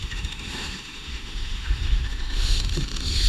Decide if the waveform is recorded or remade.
remade